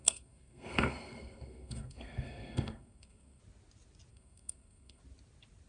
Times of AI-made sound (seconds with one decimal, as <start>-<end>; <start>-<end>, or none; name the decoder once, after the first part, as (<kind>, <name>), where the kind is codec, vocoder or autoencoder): 0.0-3.4 (codec, SNAC); 4.1-5.0